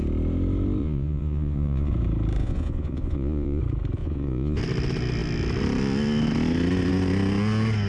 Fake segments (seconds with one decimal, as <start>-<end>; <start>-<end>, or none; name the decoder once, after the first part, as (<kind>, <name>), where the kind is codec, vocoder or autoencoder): 0.8-1.9 (vocoder, Vocos); 2.4-3.6; 4.0-4.6